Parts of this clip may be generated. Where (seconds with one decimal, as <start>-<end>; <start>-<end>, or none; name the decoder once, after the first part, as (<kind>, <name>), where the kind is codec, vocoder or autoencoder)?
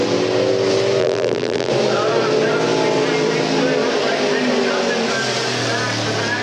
1.0-1.7 (vocoder, BigVGAN v2)